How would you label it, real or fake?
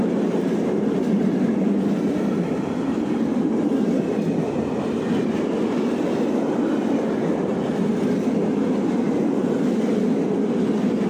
real